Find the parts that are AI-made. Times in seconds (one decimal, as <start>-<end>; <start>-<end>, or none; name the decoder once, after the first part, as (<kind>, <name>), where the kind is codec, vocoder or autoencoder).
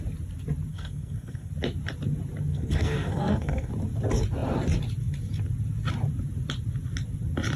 0.7-1.5 (codec, SNAC); 2.5-3.7